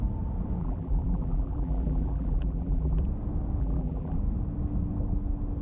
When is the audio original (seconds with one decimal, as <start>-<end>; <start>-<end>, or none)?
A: 0.0-0.6; 3.0-3.6; 4.2-5.6